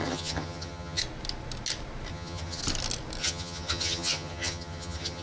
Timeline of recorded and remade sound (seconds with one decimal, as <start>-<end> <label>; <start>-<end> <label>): 0.0-1.0 remade; 1.0-2.1 recorded; 2.1-2.6 remade; 2.6-3.2 recorded; 3.2-5.2 remade